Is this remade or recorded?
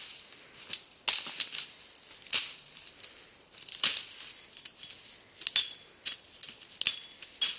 recorded